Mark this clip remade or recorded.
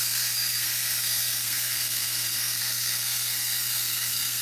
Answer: remade